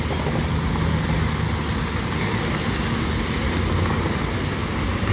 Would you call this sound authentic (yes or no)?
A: yes